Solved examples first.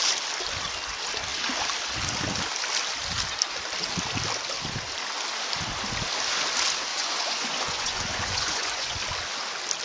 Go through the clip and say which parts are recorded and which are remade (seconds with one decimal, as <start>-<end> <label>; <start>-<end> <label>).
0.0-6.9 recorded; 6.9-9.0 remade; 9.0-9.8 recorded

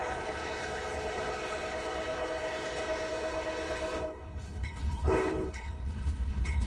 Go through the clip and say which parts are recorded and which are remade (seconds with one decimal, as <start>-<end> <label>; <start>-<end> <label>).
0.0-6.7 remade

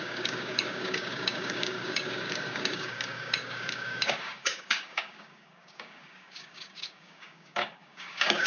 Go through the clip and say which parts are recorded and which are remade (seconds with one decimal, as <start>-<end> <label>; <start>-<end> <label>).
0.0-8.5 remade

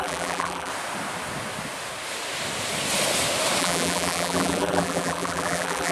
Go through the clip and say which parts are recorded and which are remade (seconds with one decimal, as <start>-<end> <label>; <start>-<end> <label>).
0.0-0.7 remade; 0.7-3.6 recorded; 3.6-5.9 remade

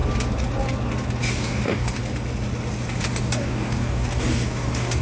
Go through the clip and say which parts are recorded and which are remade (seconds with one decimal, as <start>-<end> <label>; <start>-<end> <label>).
0.0-1.3 recorded; 1.3-2.0 remade; 2.0-3.1 recorded; 3.1-5.0 remade

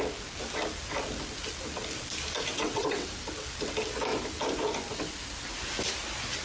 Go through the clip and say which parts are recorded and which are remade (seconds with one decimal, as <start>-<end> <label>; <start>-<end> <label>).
0.0-2.5 recorded; 2.5-3.1 remade; 3.1-6.4 recorded